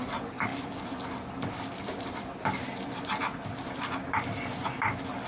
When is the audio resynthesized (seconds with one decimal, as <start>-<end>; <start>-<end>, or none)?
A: 0.5-3.7